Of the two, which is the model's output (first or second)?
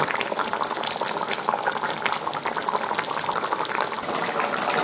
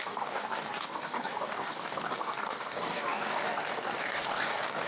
second